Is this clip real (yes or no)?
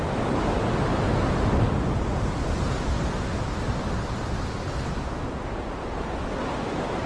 yes